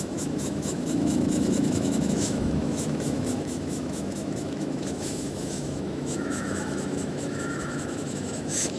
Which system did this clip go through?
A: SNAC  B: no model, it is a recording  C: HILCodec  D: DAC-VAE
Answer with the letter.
D